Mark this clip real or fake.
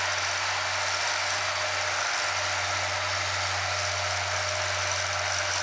real